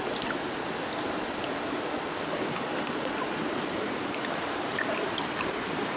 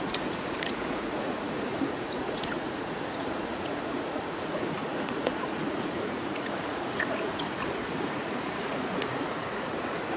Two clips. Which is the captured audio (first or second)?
first